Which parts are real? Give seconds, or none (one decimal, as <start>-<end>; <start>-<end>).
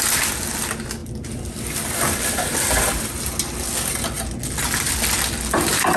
0.0-6.0